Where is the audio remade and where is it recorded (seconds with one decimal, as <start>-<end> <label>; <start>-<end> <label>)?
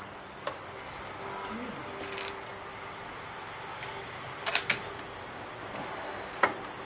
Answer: 0.0-6.9 remade